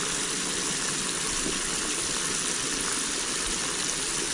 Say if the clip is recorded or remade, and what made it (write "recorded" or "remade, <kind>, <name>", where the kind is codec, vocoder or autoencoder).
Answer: recorded